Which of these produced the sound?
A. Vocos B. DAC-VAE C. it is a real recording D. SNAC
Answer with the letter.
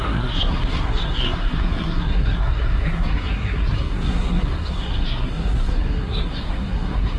D